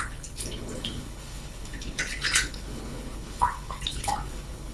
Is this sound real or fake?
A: fake